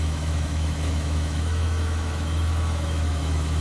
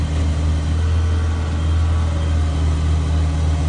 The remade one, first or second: first